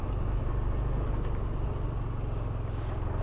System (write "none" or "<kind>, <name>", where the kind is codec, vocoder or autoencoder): none